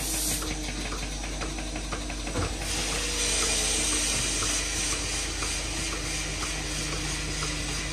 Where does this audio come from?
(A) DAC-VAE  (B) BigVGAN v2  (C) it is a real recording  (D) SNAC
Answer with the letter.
C